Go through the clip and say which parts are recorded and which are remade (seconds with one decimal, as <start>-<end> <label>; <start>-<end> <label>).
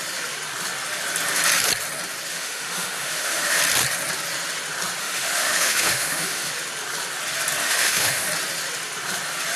0.0-2.3 recorded; 2.3-3.6 remade; 3.6-5.0 recorded; 5.0-6.5 remade; 6.5-7.6 recorded; 7.6-8.3 remade; 8.3-9.6 recorded